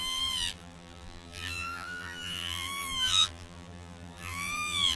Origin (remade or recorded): remade